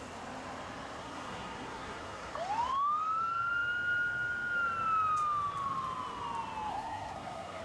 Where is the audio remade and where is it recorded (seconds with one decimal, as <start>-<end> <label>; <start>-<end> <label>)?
0.0-1.0 recorded; 1.0-2.3 remade; 2.3-6.7 recorded; 6.7-7.6 remade